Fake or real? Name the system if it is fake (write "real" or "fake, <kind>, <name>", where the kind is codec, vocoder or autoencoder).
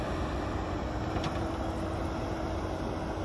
real